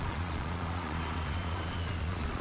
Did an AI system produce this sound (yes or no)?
yes